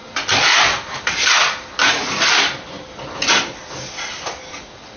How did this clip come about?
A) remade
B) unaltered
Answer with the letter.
B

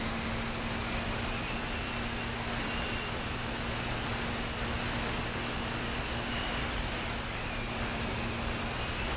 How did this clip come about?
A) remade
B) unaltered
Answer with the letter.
B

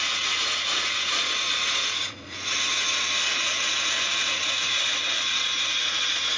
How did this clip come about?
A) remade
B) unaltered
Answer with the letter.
A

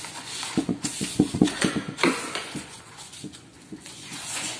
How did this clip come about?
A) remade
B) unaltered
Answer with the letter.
A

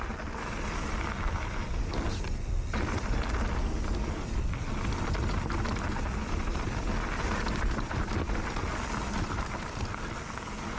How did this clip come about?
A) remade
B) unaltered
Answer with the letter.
B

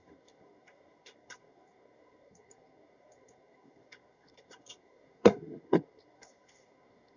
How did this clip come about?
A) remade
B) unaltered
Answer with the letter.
A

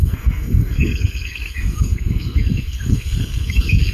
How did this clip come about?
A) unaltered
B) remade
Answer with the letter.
B